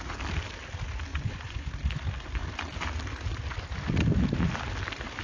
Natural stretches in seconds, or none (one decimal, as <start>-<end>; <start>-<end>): 0.0-1.1; 1.7-5.2